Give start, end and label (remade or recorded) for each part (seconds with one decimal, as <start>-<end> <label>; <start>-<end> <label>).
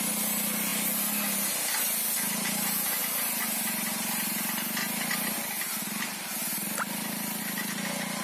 0.0-8.2 recorded